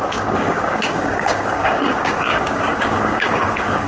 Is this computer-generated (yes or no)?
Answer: yes